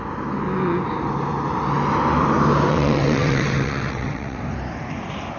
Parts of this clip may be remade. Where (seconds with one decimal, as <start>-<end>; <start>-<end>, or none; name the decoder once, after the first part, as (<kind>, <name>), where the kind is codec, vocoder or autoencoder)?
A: 2.7-4.4 (vocoder, WaveNeXt)